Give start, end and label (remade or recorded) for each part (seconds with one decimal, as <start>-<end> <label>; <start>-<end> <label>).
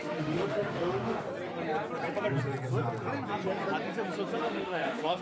0.0-1.3 remade; 1.3-4.4 recorded; 4.4-5.2 remade